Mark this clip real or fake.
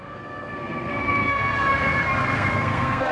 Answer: fake